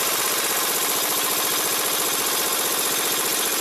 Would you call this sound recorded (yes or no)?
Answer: yes